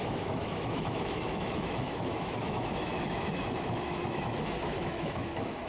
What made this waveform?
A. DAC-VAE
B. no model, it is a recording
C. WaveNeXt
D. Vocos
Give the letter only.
A